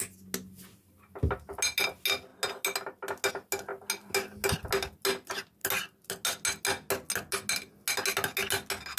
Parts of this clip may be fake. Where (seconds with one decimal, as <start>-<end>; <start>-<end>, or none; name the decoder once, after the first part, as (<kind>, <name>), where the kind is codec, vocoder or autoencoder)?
none